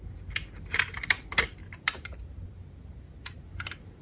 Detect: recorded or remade recorded